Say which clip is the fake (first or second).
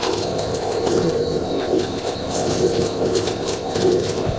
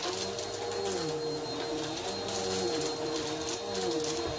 first